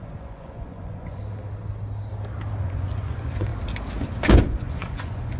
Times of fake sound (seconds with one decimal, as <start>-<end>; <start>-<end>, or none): 0.0-1.2; 2.6-3.5; 4.0-5.4